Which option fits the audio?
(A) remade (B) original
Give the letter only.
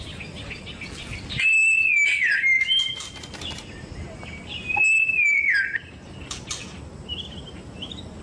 B